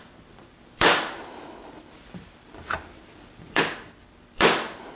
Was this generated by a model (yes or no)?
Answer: yes